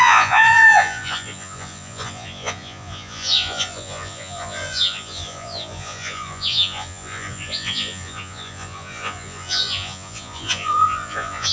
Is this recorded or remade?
remade